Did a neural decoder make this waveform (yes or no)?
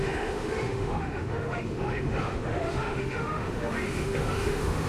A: yes